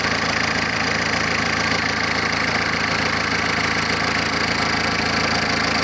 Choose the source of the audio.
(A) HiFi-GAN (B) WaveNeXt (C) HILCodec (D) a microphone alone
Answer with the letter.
D